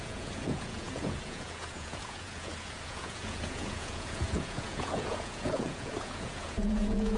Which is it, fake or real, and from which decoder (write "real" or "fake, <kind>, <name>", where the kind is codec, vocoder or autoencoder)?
fake, vocoder, Vocos